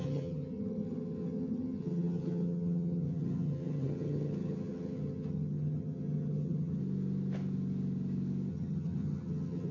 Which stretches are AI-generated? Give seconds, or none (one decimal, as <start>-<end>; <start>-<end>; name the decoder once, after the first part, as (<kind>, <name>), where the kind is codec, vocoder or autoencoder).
0.0-6.8 (vocoder, HiFi-GAN); 8.5-9.7